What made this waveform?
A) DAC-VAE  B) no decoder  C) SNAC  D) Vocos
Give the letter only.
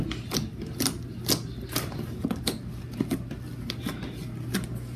B